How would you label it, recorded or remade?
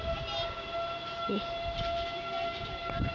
recorded